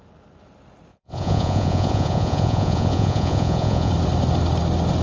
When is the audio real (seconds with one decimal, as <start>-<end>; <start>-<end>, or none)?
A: 0.0-0.9; 3.9-5.0